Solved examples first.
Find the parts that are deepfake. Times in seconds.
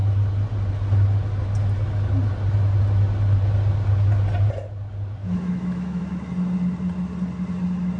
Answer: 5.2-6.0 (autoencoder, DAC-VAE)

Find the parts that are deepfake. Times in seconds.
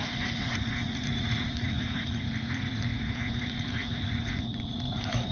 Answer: 0.0-5.3 (vocoder, Vocos)